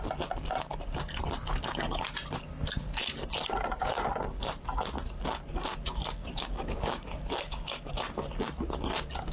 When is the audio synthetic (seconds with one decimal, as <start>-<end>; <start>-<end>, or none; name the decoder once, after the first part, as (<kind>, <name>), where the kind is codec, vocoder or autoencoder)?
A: 6.2-7.9 (codec, DAC)